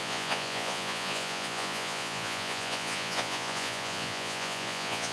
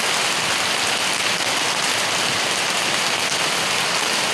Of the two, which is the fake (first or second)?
first